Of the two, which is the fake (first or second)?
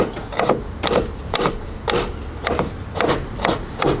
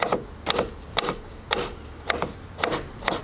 first